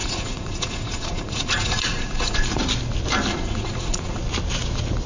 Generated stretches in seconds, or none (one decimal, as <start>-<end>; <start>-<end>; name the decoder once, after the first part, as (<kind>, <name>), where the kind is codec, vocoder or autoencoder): 0.0-2.6 (vocoder, Vocos); 3.3-4.2